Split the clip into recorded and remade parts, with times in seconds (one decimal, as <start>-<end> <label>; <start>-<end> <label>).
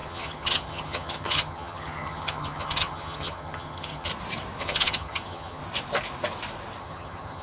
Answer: 0.0-4.1 remade; 4.1-4.6 recorded; 4.6-5.6 remade; 5.6-6.8 recorded; 6.8-7.4 remade